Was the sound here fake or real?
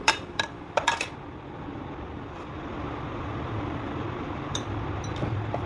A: fake